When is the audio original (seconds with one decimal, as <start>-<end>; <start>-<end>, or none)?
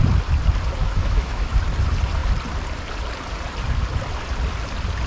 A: 0.0-0.8; 1.5-5.1